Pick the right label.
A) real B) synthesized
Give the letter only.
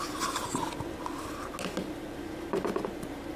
A